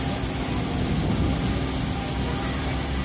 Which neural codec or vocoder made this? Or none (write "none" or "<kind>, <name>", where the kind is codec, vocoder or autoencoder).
none